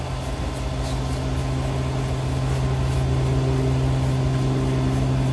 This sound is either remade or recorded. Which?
recorded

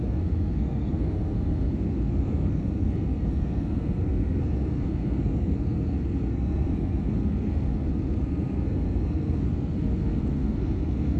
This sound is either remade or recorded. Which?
remade